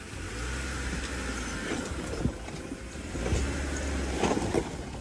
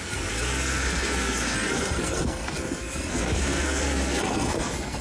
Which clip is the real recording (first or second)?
first